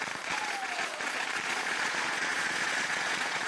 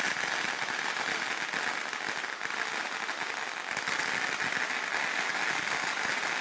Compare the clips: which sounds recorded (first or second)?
second